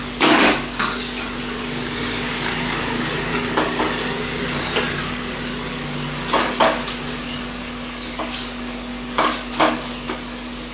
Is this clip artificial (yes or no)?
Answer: yes